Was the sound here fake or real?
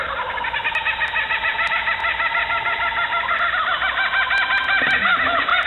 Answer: real